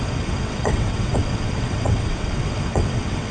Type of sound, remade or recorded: remade